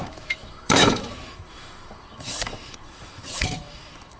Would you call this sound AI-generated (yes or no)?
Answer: yes